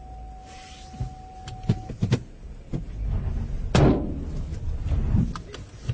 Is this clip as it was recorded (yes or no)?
yes